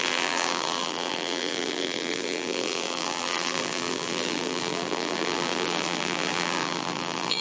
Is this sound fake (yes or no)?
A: yes